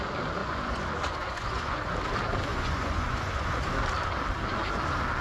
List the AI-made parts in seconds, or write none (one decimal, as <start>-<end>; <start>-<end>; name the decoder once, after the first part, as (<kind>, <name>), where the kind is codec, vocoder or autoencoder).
0.4-1.9 (vocoder, Vocos); 2.5-3.7